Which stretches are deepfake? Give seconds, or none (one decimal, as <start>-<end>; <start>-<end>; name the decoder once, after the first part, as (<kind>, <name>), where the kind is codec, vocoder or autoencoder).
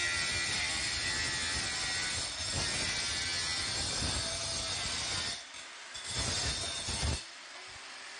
none